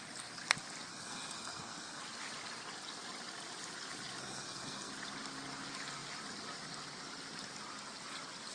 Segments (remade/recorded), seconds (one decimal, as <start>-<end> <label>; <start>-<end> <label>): 0.0-0.9 recorded; 0.9-2.0 remade; 2.0-4.2 recorded; 4.2-4.9 remade; 4.9-8.5 recorded